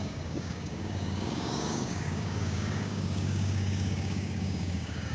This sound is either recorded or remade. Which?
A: remade